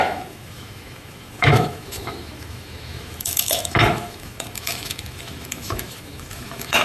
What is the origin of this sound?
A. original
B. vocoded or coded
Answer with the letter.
B